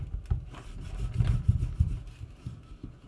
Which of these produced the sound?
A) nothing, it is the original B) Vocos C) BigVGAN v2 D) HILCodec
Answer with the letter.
A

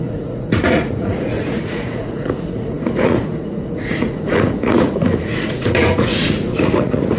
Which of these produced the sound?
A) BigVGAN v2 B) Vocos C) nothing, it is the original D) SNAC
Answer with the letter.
B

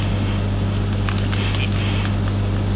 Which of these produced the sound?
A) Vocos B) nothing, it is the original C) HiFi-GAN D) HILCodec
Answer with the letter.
B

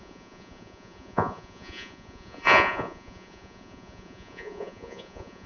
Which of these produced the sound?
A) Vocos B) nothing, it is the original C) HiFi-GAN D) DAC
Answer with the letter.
A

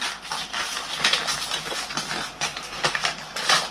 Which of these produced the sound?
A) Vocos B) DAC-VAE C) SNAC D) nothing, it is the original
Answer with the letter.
D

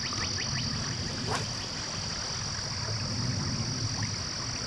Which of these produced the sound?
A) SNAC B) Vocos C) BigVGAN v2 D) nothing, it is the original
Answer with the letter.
D